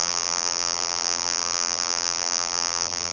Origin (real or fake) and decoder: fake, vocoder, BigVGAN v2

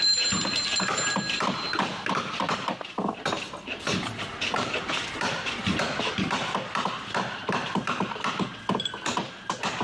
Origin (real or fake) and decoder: fake, vocoder, BigVGAN v2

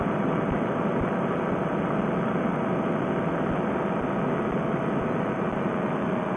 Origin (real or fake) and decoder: real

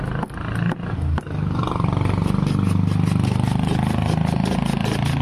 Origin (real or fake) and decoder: real